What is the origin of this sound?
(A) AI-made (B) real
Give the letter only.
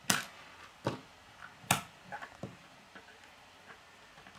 B